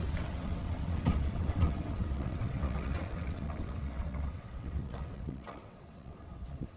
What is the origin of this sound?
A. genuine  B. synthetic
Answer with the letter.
B